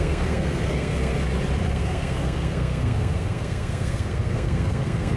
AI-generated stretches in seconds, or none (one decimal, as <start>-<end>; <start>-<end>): 0.0-1.1; 1.7-5.2